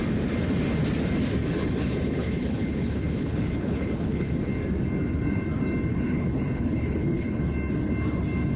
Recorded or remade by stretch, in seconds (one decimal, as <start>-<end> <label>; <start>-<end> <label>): 0.0-1.4 recorded; 1.4-4.3 remade; 4.3-5.9 recorded; 5.9-7.4 remade; 7.4-8.6 recorded